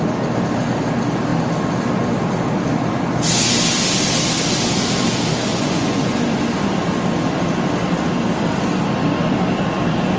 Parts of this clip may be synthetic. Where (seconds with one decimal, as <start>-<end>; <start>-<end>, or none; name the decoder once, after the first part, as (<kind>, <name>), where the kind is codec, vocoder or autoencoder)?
5.5-6.2 (vocoder, Vocos)